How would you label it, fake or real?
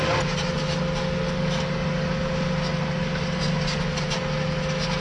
real